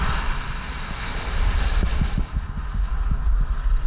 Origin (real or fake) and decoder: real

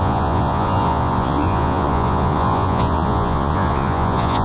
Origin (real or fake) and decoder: fake, vocoder, Vocos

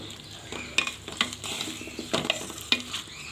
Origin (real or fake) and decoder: real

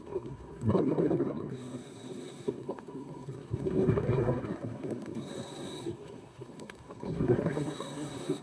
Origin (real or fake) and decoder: fake, codec, SNAC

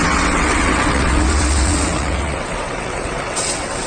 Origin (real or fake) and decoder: fake, vocoder, WaveNeXt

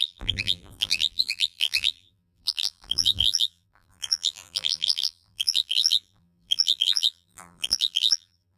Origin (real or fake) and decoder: fake, vocoder, BigVGAN v2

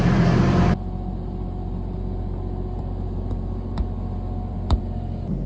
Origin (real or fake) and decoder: fake, vocoder, BigVGAN v2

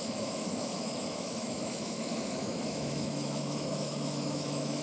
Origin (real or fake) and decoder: fake, autoencoder, DAC-VAE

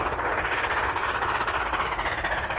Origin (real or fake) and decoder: real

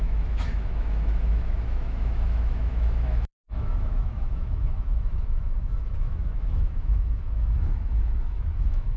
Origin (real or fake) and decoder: fake, autoencoder, DAC-VAE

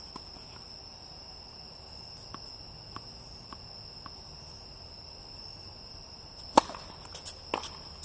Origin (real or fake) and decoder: real